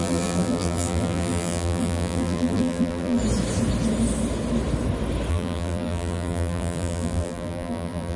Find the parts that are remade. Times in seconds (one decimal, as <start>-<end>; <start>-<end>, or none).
0.0-3.2; 5.3-8.2